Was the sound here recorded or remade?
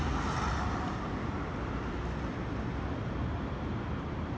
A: recorded